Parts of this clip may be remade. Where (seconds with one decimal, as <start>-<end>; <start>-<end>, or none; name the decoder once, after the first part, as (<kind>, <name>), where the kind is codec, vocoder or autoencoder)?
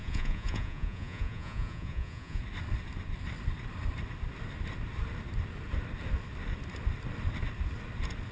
0.0-2.4 (vocoder, Vocos)